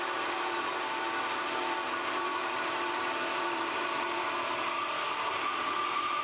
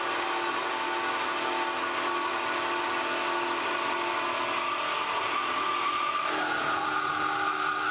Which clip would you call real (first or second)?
second